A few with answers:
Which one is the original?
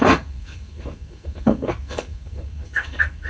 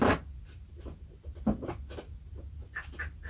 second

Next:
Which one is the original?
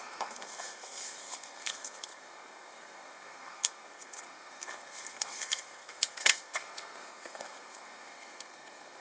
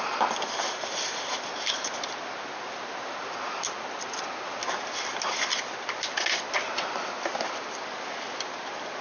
second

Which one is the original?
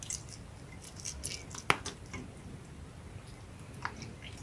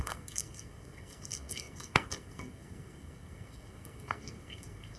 first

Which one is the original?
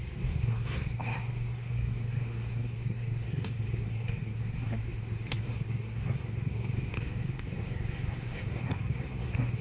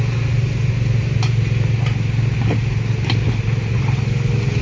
second